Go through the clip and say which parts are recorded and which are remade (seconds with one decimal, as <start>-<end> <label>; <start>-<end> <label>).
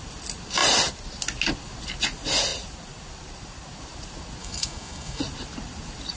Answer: 0.0-4.4 recorded; 4.4-5.2 remade; 5.2-6.2 recorded